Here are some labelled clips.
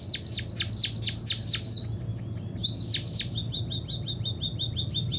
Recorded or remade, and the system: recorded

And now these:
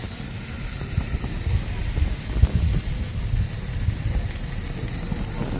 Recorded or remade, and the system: recorded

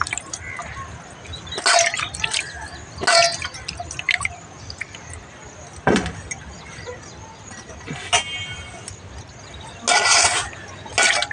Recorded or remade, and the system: recorded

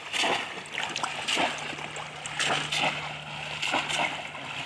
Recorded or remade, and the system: recorded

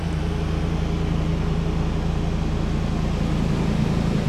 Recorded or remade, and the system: recorded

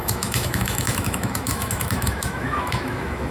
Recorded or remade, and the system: remade, autoencoder, DAC-VAE